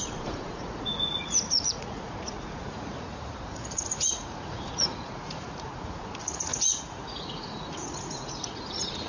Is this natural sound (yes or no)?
no